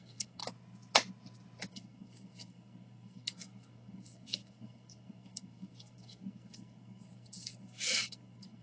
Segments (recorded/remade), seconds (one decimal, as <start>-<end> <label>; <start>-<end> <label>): 0.0-0.4 remade; 0.4-1.7 recorded; 1.7-8.6 remade